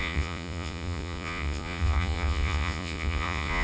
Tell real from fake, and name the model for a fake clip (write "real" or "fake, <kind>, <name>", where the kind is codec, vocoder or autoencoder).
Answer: fake, vocoder, Vocos